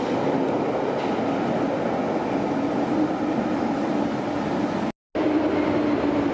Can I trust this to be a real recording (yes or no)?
yes